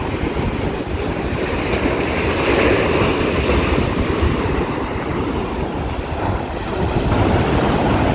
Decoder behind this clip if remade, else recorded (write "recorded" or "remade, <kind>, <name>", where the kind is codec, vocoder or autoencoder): recorded